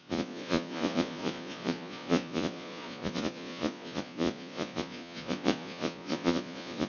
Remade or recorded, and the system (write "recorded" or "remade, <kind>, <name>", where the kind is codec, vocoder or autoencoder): remade, vocoder, Vocos